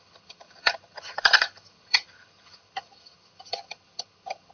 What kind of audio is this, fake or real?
fake